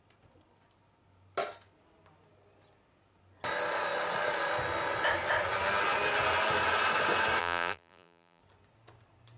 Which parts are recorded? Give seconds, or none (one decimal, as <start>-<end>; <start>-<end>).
0.0-7.4; 8.4-9.4